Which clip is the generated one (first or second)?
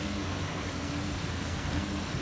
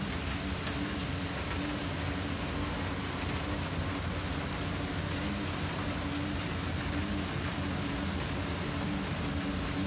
first